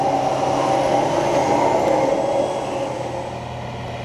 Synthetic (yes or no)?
no